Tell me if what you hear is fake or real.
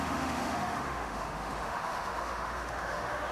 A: fake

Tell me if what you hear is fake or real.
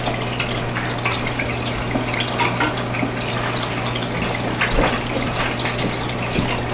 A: real